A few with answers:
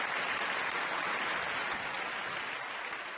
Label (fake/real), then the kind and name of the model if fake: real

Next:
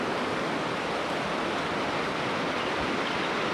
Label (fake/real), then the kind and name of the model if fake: real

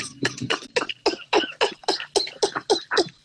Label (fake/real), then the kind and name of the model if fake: real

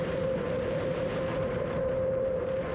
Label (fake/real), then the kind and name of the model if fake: fake, vocoder, BigVGAN v2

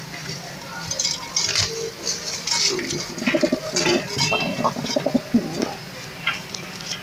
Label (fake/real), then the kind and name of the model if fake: real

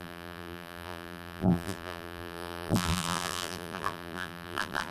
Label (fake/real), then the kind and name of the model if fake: fake, vocoder, BigVGAN v2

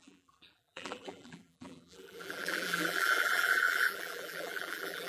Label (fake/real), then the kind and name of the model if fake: fake, vocoder, BigVGAN v2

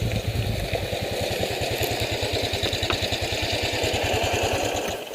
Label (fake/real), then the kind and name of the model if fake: real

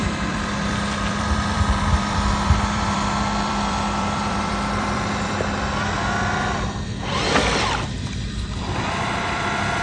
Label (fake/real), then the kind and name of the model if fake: fake, vocoder, BigVGAN v2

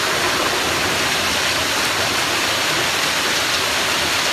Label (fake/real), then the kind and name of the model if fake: fake, vocoder, BigVGAN v2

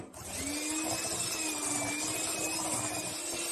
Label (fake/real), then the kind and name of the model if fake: real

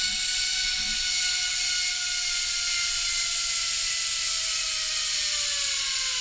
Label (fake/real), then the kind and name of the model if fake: real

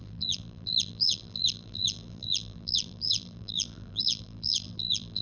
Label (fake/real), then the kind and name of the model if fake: fake, vocoder, BigVGAN v2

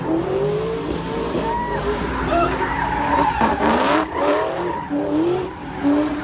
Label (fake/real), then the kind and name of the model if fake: fake, vocoder, BigVGAN v2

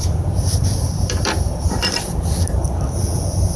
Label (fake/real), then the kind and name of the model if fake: fake, vocoder, BigVGAN v2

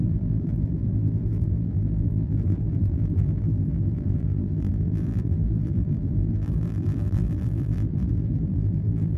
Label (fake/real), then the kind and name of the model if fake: fake, vocoder, BigVGAN v2